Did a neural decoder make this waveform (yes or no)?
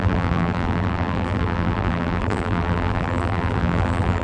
yes